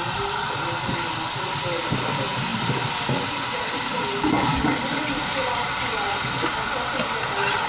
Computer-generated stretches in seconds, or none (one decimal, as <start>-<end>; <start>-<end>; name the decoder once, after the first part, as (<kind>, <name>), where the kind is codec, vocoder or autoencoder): none